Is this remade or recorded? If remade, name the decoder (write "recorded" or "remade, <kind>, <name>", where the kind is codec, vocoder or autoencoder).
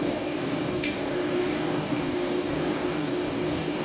remade, codec, DAC